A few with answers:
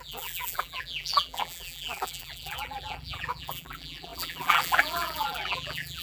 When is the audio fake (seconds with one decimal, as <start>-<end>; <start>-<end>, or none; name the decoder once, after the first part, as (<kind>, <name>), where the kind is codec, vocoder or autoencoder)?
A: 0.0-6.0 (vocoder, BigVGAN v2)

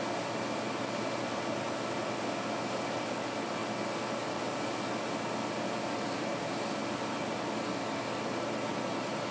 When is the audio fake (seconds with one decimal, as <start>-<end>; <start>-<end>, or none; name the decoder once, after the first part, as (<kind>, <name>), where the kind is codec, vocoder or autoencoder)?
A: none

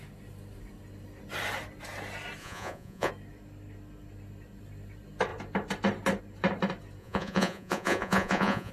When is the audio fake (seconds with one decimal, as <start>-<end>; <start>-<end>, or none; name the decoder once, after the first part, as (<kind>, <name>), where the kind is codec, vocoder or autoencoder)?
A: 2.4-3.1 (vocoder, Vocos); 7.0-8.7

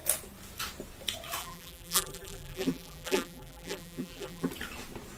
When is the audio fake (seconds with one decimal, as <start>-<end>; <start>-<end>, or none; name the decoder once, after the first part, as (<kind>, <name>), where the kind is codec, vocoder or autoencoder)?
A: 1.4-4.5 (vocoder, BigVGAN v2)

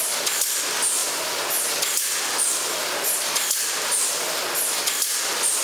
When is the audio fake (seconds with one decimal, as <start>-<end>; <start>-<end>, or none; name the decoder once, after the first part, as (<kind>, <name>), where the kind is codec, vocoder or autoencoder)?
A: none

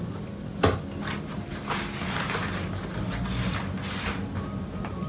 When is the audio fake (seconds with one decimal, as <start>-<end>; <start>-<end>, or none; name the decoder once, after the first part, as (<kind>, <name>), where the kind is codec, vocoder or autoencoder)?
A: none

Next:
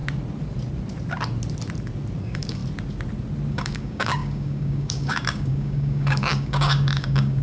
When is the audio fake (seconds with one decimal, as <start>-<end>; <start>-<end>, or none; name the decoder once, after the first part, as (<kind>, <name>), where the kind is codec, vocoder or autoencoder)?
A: 2.2-2.6 (codec, DAC); 3.5-7.4

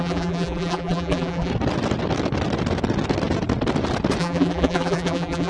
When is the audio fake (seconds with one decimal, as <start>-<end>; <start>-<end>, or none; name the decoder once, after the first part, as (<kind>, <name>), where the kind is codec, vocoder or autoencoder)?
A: 0.0-1.5 (vocoder, BigVGAN v2); 4.2-5.5